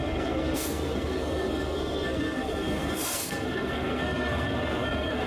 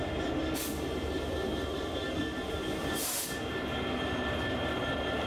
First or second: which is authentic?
second